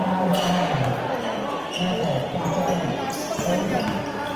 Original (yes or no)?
yes